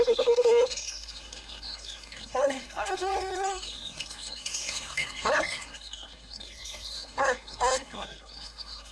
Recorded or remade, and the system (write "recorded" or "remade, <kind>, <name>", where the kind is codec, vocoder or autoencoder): remade, codec, SNAC